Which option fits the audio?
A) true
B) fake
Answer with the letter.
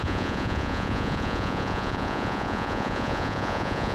B